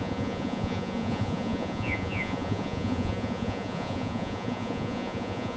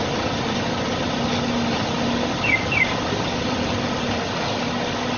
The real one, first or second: second